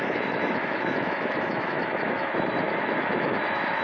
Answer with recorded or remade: remade